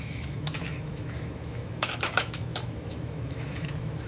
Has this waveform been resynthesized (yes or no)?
yes